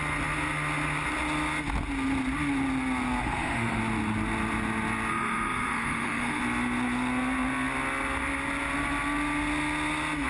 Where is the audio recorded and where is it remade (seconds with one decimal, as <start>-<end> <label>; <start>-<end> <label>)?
0.0-3.2 recorded; 3.2-3.8 remade; 3.8-5.1 recorded; 5.1-6.4 remade; 6.4-10.3 recorded